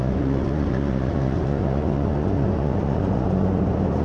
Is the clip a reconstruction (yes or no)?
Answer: yes